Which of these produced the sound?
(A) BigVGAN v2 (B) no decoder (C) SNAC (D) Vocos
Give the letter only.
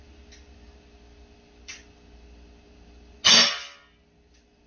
B